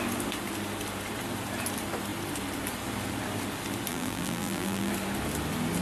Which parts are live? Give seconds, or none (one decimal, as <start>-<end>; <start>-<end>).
0.0-3.9; 4.9-5.8